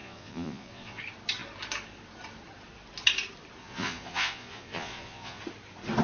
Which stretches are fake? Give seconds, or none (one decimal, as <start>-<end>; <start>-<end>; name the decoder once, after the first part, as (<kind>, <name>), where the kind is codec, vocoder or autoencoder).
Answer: 0.0-1.0 (vocoder, Vocos); 3.6-5.4